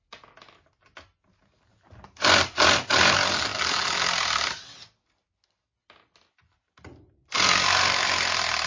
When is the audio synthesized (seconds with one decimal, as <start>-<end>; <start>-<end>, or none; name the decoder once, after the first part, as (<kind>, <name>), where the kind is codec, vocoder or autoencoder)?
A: none